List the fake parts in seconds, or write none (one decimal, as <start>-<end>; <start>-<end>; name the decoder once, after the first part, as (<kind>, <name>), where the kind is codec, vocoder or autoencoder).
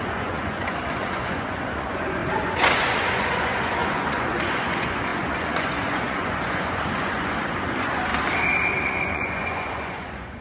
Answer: 0.0-8.1 (vocoder, Vocos); 8.8-10.4